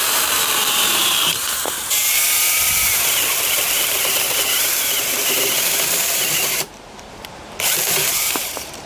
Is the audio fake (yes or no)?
yes